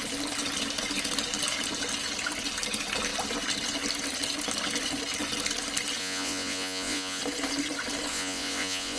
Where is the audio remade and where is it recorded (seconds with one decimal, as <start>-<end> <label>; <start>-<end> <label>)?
0.0-6.0 recorded; 6.0-7.2 remade; 7.2-8.1 recorded; 8.1-9.0 remade